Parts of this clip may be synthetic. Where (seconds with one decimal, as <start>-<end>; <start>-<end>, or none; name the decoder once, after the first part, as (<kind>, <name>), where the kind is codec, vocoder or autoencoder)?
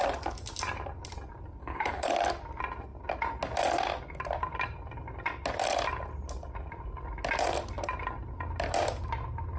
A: 1.6-2.1 (codec, HILCodec)